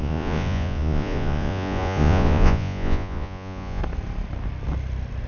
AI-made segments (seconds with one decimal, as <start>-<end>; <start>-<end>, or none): 0.0-3.8